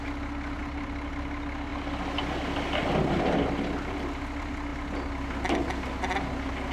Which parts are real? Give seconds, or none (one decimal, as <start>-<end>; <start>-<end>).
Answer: 0.0-6.7